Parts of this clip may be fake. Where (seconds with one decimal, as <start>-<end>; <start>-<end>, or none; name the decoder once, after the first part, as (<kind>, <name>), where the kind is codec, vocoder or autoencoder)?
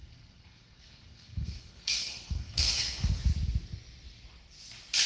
0.0-3.1 (codec, SNAC)